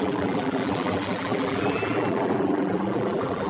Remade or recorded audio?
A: remade